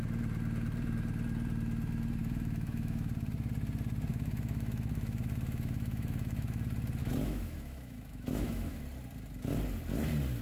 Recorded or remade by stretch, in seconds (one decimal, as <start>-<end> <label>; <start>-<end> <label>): 0.0-2.2 recorded; 2.2-3.1 remade; 3.1-4.1 recorded; 4.1-6.6 remade; 6.6-7.0 recorded; 7.0-8.8 remade; 8.8-10.4 recorded